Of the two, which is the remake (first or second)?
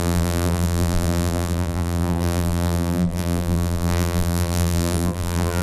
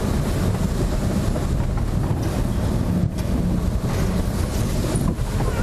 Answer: first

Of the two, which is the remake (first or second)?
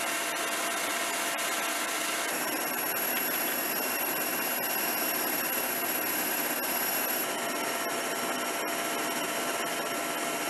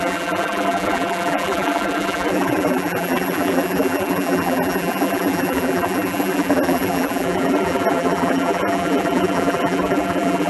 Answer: second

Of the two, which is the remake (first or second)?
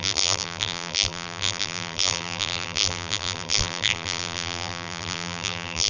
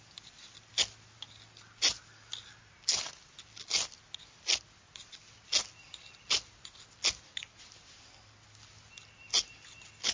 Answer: first